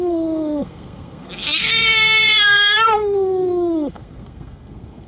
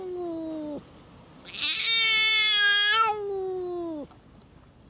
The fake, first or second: first